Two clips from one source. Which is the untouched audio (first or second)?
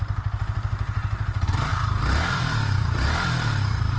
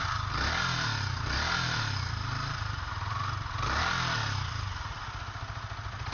second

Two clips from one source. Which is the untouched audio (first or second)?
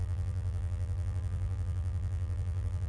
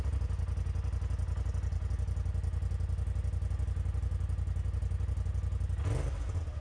second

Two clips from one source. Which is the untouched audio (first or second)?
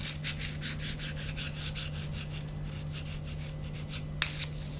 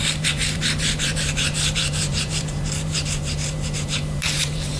first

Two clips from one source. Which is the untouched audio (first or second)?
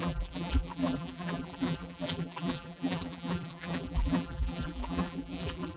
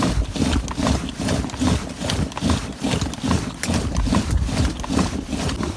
second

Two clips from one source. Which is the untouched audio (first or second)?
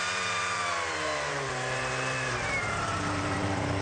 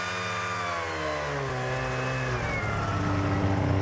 second